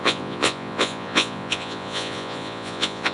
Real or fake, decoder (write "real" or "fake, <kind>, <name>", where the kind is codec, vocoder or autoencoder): fake, vocoder, Vocos